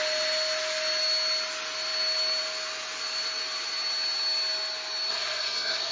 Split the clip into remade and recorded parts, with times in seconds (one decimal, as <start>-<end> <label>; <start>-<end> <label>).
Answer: 0.0-5.1 recorded; 5.1-5.9 remade